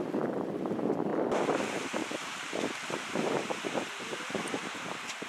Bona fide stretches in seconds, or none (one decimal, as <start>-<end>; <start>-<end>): 0.0-2.0